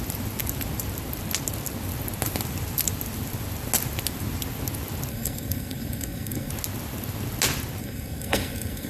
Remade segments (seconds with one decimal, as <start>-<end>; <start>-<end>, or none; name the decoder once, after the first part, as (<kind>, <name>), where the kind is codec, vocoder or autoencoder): 5.1-6.5 (codec, SNAC); 7.8-8.9